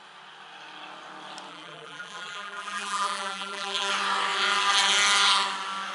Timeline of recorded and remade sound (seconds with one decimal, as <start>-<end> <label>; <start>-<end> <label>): 0.0-1.5 recorded; 1.5-3.9 remade; 3.9-5.9 recorded